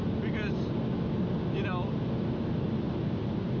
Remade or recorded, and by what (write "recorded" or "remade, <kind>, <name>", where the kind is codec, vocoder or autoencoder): recorded